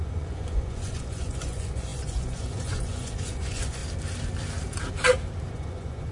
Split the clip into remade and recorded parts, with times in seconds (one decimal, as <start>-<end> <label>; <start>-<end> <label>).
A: 0.0-3.8 remade; 3.8-5.5 recorded; 5.5-6.1 remade